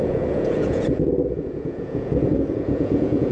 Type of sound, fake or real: fake